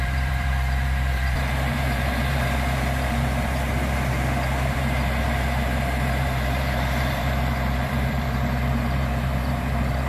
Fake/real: fake